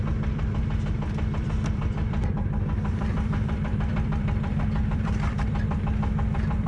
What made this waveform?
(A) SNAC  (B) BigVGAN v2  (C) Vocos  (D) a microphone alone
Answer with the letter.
B